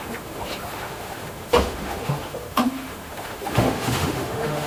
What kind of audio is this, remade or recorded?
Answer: remade